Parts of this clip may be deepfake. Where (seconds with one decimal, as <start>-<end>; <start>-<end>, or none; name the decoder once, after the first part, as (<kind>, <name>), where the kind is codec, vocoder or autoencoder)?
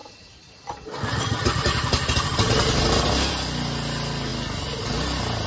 none